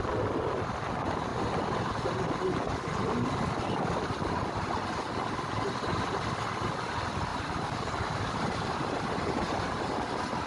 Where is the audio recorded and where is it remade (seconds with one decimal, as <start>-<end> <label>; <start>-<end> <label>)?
0.0-7.3 recorded; 7.3-9.8 remade; 9.8-10.5 recorded